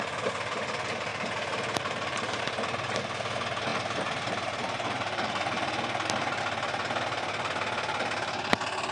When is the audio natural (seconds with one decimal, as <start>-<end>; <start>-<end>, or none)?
0.0-1.1; 2.4-3.7; 6.4-8.9